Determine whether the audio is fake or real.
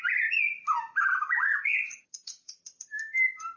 real